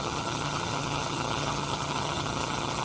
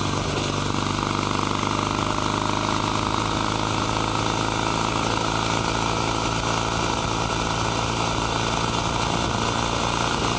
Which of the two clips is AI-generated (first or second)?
first